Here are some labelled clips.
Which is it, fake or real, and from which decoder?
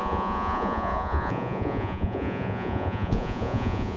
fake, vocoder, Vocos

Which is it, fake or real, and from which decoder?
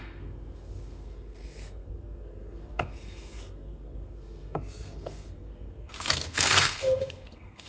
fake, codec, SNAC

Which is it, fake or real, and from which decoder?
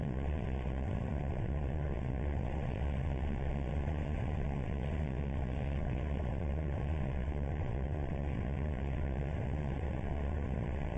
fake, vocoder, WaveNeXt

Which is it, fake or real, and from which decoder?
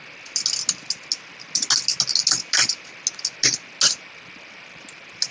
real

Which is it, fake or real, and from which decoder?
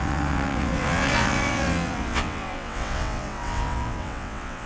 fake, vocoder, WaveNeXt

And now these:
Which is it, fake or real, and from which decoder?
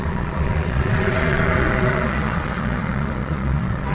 fake, vocoder, Vocos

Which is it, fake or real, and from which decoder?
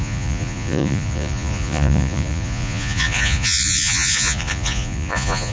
fake, vocoder, Vocos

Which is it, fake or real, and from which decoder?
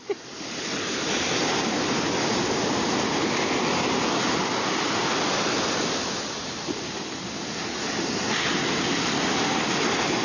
real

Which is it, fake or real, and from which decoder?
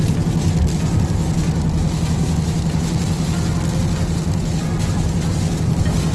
real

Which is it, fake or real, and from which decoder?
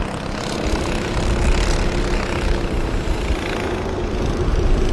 real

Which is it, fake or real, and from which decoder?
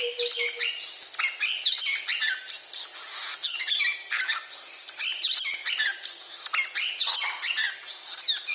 real